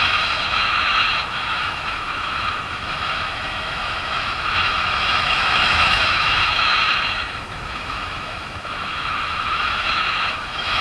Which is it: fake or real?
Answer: fake